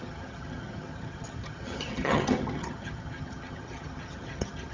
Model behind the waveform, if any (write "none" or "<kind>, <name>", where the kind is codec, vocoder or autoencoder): vocoder, HiFi-GAN